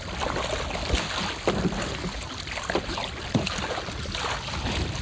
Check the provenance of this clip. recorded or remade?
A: recorded